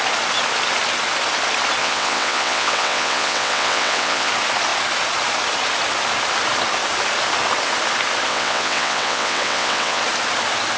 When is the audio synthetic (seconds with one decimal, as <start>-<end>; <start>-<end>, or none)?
1.8-4.3; 8.3-10.0